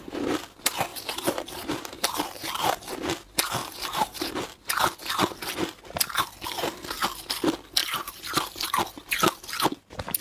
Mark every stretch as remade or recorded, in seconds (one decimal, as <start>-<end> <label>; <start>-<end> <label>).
0.0-0.9 recorded; 0.9-2.9 remade; 2.9-3.6 recorded; 3.6-4.3 remade; 4.3-7.8 recorded; 7.8-8.3 remade; 8.3-10.2 recorded